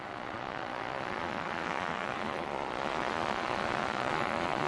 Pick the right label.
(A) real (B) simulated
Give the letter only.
B